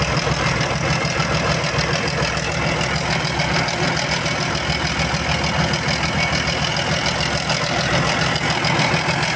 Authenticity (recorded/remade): recorded